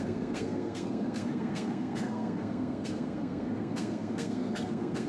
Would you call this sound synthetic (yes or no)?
yes